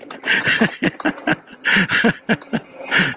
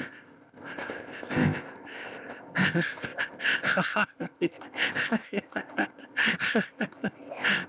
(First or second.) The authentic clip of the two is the first